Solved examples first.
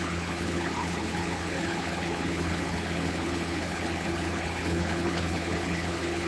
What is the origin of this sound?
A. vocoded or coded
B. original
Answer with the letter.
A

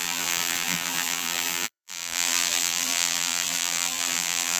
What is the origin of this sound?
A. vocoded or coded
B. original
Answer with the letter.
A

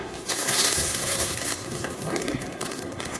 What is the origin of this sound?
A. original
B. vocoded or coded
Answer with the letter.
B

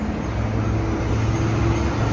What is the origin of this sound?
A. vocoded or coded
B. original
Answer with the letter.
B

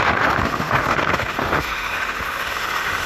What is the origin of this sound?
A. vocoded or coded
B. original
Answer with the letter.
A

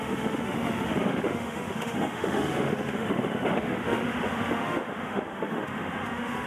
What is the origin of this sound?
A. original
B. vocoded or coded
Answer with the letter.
B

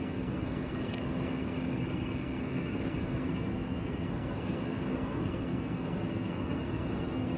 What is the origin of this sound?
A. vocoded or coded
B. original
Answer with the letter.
A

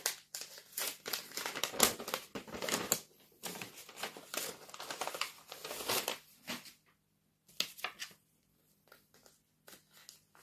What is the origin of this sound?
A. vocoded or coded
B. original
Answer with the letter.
B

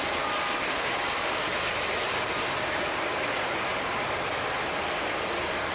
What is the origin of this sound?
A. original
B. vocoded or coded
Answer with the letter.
A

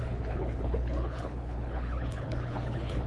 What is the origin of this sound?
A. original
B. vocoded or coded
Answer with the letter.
B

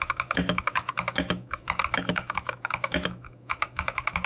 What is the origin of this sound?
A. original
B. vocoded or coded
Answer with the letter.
B